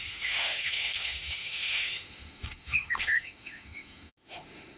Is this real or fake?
fake